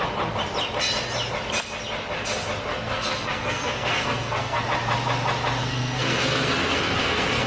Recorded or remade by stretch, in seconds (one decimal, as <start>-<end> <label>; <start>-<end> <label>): 0.0-2.7 recorded; 2.7-4.6 remade; 4.6-5.6 recorded; 5.6-7.5 remade